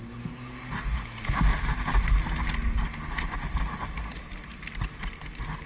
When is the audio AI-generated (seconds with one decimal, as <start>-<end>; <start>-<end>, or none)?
none